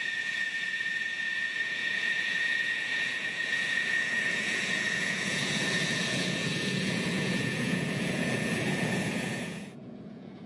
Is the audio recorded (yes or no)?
no